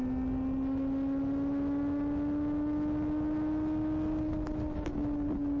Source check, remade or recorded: recorded